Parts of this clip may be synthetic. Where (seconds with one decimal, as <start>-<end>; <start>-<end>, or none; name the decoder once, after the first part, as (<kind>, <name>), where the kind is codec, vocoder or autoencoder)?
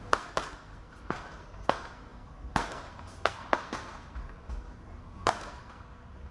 0.0-6.3 (codec, SNAC)